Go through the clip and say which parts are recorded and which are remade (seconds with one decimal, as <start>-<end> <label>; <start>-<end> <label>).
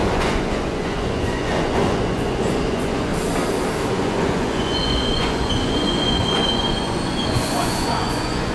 0.0-3.1 remade; 3.1-3.9 recorded; 3.9-8.5 remade